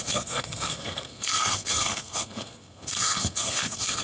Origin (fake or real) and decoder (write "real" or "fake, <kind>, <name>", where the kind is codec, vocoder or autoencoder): fake, codec, SNAC